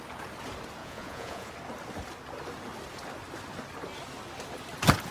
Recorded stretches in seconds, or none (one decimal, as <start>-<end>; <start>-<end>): 0.0-0.8; 1.5-5.1